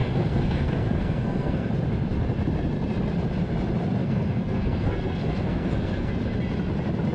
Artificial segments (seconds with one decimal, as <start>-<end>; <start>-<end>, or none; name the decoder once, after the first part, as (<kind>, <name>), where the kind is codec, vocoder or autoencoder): 0.0-1.7 (codec, SNAC); 4.0-6.1